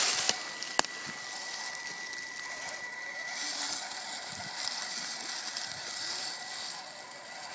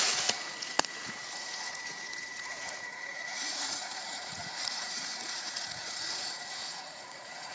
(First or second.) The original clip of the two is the first